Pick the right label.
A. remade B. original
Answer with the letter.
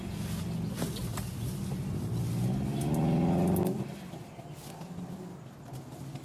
B